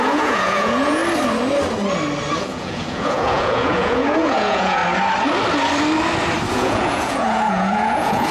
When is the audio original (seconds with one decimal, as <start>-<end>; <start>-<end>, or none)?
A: 1.0-2.4; 4.8-6.5